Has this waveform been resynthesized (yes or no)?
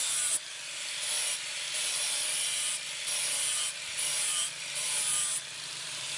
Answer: yes